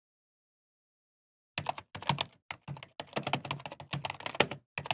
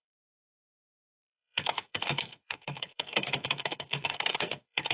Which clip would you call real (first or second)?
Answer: first